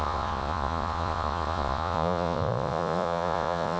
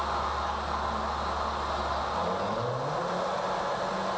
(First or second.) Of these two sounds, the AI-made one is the first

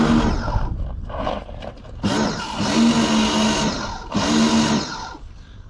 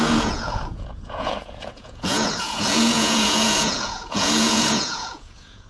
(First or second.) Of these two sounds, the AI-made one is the second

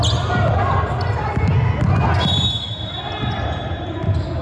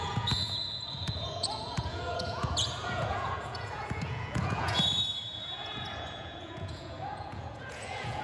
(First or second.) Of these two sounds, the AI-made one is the second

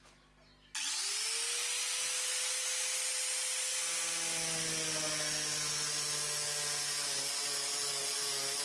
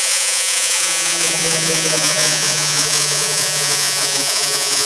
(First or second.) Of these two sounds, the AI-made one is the second